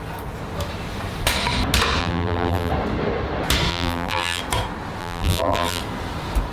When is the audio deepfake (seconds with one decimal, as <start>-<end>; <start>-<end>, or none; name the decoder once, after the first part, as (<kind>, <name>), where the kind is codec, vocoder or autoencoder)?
2.0-2.7 (vocoder, BigVGAN v2); 3.7-4.4; 5.0-5.8